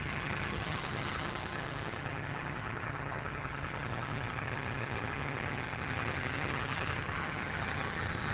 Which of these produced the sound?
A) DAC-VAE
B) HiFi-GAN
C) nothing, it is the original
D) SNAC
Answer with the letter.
B